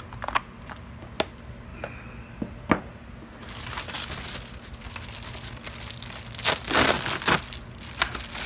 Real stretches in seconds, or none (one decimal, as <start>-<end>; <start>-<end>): 0.0-8.5